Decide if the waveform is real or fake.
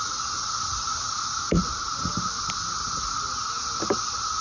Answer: real